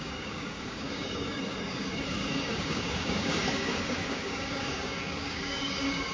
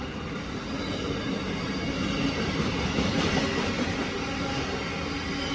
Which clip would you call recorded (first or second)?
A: second